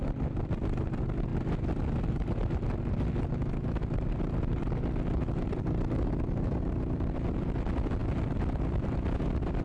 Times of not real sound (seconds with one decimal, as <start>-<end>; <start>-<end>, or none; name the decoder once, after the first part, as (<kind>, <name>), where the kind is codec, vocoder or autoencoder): none